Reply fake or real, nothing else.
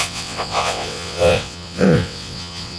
fake